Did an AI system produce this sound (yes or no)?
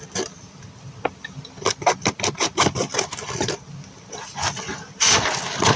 no